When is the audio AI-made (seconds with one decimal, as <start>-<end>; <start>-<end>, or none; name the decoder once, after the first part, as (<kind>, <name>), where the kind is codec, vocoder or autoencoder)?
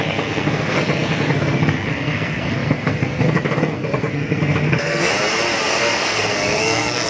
0.0-5.1 (codec, SNAC); 5.7-7.1